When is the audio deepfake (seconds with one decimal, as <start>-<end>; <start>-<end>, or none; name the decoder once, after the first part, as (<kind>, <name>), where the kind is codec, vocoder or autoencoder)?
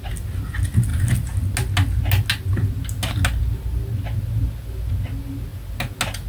none